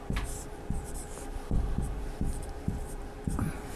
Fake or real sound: fake